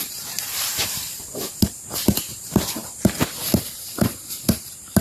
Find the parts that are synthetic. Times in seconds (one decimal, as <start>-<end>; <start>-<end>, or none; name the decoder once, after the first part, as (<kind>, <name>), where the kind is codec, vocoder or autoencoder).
0.0-1.2 (vocoder, BigVGAN v2); 2.2-5.0